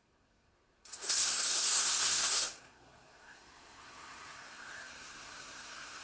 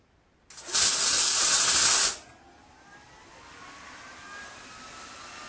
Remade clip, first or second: first